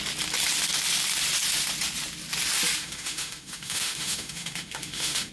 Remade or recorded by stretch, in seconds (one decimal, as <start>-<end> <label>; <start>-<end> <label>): 0.0-2.8 recorded; 2.8-5.3 remade